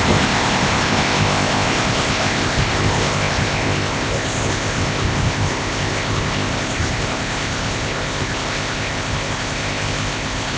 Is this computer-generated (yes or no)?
yes